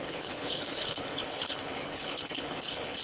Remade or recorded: remade